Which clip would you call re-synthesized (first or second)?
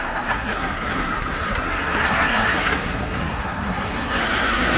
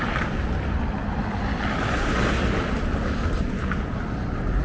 first